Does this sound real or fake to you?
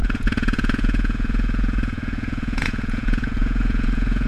fake